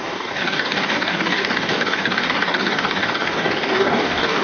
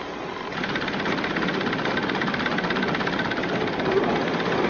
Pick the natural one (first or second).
second